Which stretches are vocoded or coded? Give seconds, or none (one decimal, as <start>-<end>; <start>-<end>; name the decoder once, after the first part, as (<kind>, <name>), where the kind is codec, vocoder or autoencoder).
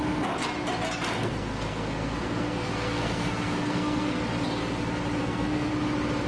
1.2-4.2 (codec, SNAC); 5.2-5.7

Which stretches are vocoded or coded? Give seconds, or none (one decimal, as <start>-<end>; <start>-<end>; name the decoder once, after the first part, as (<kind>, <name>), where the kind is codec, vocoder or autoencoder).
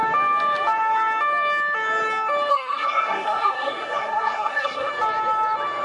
2.5-4.9 (codec, SNAC)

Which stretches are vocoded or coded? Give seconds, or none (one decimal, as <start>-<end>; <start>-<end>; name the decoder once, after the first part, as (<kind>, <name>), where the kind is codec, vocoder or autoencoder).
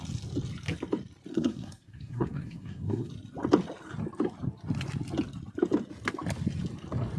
1.3-3.1 (codec, SNAC)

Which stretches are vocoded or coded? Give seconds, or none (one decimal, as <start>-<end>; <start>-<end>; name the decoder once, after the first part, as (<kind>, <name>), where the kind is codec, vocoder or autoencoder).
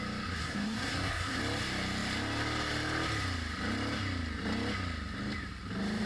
0.4-1.4 (codec, SNAC)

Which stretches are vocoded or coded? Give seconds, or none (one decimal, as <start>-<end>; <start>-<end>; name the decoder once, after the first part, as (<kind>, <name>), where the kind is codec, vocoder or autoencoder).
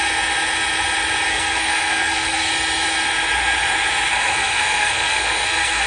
1.3-2.5 (codec, SNAC); 4.1-5.9